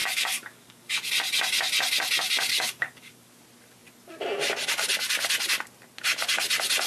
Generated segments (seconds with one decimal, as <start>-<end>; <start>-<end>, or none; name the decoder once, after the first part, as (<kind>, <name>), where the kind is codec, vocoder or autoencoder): 0.0-1.1 (codec, DAC); 2.5-3.4